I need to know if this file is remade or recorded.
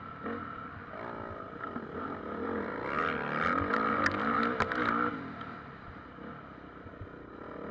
recorded